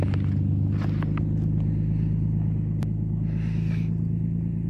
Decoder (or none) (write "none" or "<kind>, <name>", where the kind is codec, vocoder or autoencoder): none